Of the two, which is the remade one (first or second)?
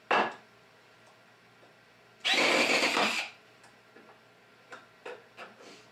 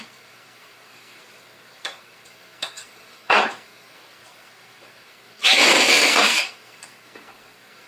second